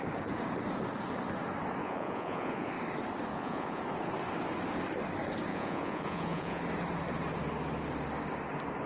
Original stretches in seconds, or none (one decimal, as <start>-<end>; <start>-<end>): 0.0-1.8; 2.7-3.3; 3.8-5.5; 6.6-8.9